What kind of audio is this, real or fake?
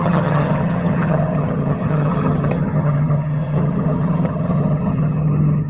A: fake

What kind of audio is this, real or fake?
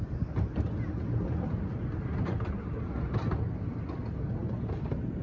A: real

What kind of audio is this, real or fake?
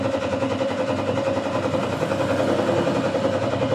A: real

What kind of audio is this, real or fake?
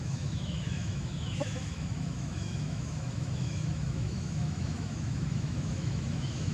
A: fake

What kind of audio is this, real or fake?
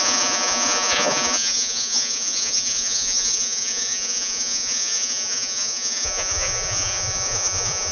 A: fake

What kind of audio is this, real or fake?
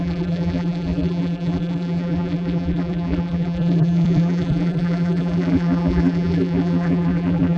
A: fake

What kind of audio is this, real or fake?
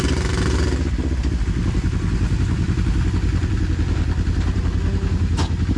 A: real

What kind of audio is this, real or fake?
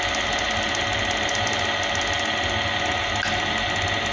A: real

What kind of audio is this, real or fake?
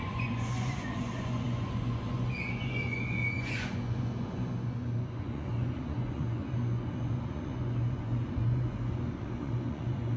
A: fake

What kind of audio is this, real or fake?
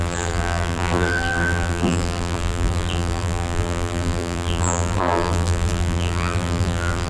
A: fake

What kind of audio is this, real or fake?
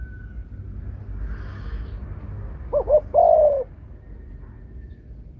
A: real